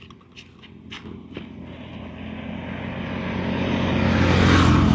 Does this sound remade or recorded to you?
recorded